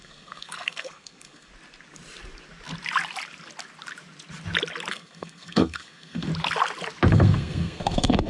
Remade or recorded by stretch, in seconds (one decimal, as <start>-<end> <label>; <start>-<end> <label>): 0.0-1.5 remade; 1.5-4.9 recorded; 4.9-6.3 remade; 6.3-7.1 recorded; 7.1-8.3 remade